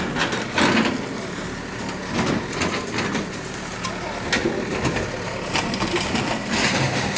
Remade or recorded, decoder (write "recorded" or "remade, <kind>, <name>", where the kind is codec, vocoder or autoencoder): recorded